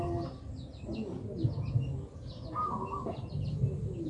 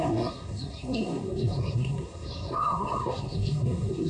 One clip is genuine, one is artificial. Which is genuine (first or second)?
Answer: first